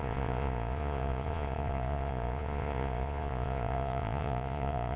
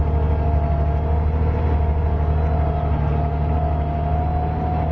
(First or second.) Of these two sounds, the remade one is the first